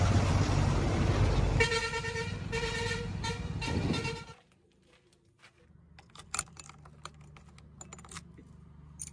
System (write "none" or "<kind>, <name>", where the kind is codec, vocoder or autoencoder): none